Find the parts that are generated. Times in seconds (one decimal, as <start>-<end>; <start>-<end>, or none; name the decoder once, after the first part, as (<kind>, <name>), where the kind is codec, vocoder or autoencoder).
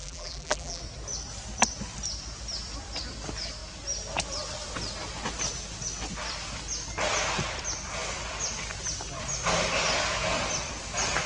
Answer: 0.0-0.8 (vocoder, BigVGAN v2)